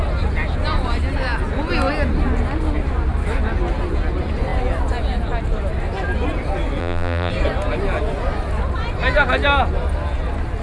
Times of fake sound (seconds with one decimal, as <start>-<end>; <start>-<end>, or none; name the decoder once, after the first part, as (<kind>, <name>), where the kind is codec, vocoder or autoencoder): 6.8-7.3 (vocoder, BigVGAN v2)